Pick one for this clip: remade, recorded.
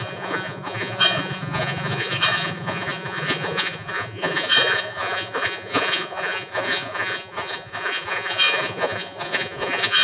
remade